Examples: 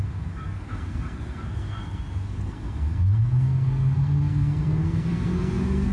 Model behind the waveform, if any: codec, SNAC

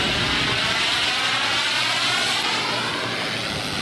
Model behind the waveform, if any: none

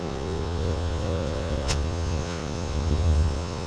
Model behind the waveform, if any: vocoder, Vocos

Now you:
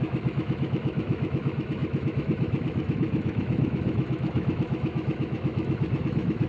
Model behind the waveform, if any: autoencoder, DAC-VAE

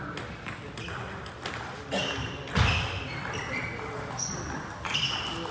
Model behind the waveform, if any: none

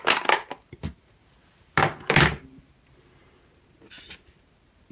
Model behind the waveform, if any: none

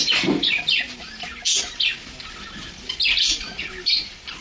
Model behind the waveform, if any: none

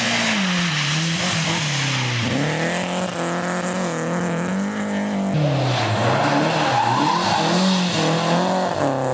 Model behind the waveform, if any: none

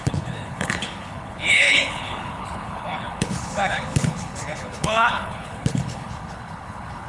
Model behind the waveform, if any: codec, HILCodec